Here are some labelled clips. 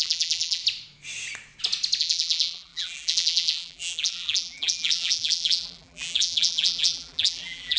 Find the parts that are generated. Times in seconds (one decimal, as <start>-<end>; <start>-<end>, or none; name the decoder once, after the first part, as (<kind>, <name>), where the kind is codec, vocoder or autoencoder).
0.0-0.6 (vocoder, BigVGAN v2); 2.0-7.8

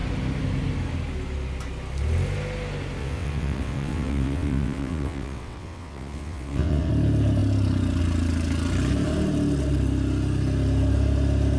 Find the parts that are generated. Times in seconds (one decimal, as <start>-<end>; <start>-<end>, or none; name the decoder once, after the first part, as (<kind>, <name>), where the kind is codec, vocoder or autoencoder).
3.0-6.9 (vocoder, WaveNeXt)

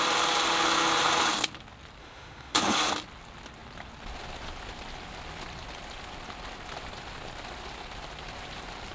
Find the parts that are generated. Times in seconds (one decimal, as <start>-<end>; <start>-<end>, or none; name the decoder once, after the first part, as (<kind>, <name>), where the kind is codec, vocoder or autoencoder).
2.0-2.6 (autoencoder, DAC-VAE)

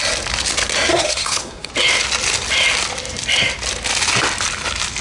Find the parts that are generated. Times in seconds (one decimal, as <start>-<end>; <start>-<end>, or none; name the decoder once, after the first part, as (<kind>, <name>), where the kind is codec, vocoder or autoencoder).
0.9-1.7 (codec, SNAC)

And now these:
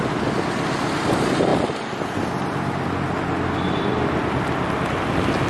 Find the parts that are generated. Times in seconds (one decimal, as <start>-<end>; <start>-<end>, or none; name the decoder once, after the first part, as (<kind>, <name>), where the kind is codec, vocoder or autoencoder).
none